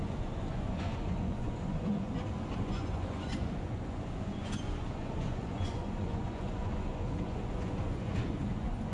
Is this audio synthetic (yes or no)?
yes